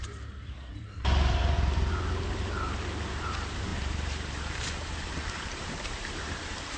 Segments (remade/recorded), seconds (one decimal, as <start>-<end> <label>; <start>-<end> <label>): 0.0-1.4 remade; 1.4-2.4 recorded; 2.4-6.8 remade